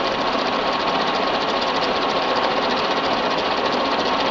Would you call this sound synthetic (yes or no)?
no